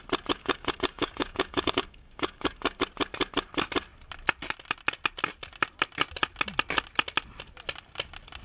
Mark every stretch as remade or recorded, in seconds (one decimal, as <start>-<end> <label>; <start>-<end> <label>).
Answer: 0.0-0.4 recorded; 0.4-2.8 remade; 2.8-8.4 recorded